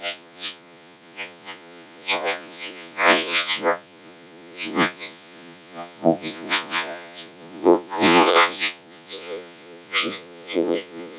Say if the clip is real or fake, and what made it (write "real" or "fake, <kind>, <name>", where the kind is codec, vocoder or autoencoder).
fake, vocoder, Vocos